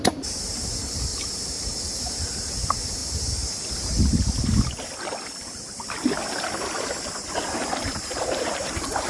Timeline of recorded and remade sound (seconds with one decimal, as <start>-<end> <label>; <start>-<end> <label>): 0.0-3.0 remade; 3.0-7.1 recorded; 7.1-9.1 remade